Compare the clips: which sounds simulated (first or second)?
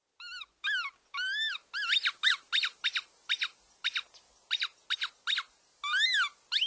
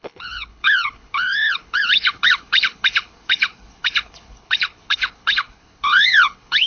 second